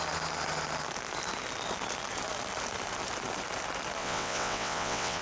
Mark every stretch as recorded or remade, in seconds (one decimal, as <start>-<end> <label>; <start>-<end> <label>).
0.0-4.0 recorded; 4.0-5.2 remade